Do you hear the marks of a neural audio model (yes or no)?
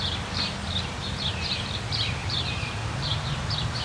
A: yes